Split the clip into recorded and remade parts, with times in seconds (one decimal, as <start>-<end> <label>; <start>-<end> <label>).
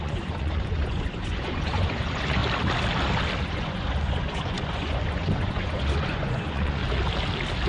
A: 0.0-2.4 remade; 2.4-3.4 recorded; 3.4-6.8 remade; 6.8-7.7 recorded